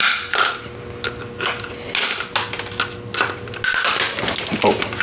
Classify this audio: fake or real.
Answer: real